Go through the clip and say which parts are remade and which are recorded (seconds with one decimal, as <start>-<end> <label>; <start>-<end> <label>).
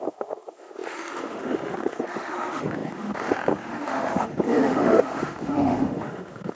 0.0-6.5 remade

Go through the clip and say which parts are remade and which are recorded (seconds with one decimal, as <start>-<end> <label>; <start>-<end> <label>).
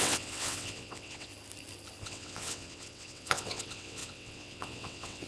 0.0-1.3 remade; 1.3-2.0 recorded; 2.0-5.3 remade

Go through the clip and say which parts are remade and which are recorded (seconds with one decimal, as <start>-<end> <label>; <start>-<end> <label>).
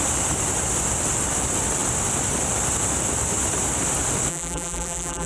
0.0-4.3 recorded; 4.3-5.3 remade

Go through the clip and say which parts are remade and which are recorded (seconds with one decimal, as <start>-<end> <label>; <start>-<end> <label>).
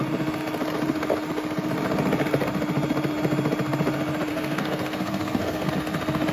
0.0-4.3 recorded; 4.3-5.7 remade; 5.7-6.3 recorded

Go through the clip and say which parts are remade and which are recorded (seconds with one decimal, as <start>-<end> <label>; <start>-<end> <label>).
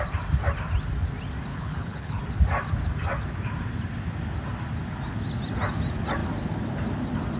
0.0-1.5 recorded; 1.5-2.2 remade; 2.2-7.4 recorded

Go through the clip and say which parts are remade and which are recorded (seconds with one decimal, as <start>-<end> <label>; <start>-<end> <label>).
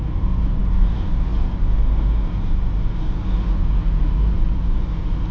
0.0-5.3 recorded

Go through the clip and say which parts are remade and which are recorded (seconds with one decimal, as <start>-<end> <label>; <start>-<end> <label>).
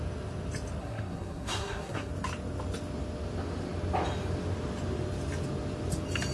0.0-0.8 recorded; 0.8-2.1 remade; 2.1-6.3 recorded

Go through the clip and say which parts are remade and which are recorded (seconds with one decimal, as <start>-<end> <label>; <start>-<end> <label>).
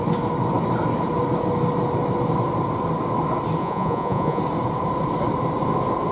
0.0-3.6 recorded; 3.6-4.4 remade; 4.4-6.1 recorded